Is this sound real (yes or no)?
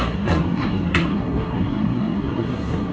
no